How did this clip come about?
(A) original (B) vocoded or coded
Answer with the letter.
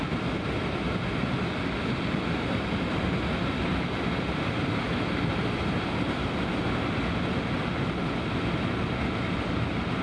A